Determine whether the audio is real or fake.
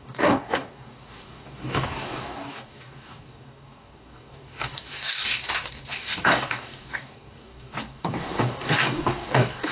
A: fake